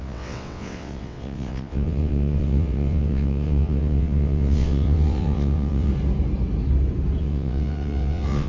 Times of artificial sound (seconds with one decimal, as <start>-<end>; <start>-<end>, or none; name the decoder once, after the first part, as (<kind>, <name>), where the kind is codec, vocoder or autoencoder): 0.0-5.9 (vocoder, WaveNeXt); 7.2-8.5